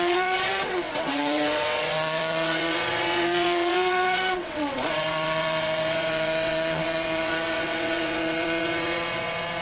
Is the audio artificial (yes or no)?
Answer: yes